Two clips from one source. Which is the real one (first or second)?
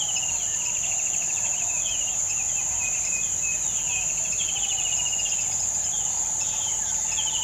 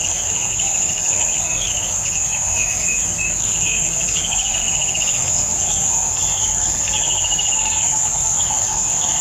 first